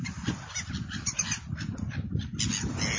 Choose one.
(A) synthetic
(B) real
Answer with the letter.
B